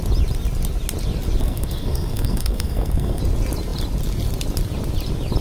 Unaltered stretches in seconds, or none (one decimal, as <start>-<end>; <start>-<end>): 0.0-1.4; 3.2-5.4